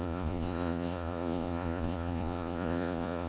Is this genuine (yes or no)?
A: no